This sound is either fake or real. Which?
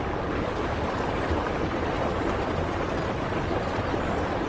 real